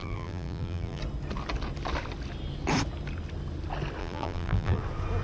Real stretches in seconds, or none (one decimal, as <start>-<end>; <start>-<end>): 1.0-4.0; 4.8-5.2